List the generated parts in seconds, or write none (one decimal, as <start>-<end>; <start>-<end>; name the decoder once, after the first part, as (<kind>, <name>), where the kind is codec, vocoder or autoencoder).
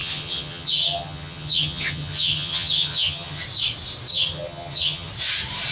0.0-3.4 (vocoder, HiFi-GAN); 4.1-5.1